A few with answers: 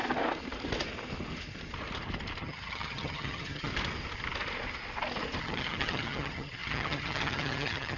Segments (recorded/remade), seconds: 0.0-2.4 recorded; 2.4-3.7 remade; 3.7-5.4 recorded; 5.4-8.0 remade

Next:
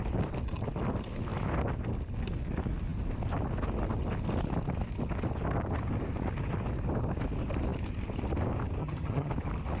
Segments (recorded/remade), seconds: 0.0-8.8 recorded; 8.8-9.3 remade; 9.3-9.8 recorded

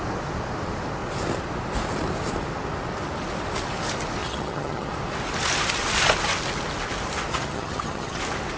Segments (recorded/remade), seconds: 0.0-4.2 recorded; 4.2-4.9 remade; 4.9-7.3 recorded; 7.3-8.2 remade; 8.2-8.6 recorded

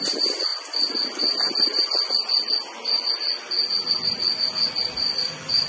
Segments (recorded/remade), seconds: 0.0-5.7 recorded